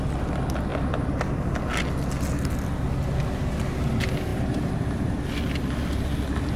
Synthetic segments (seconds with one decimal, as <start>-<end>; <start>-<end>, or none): 0.7-1.6; 4.3-5.1